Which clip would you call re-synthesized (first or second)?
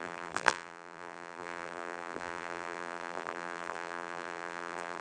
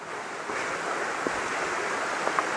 first